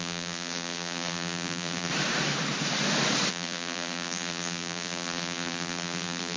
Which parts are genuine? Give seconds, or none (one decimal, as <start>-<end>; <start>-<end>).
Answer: 1.9-3.3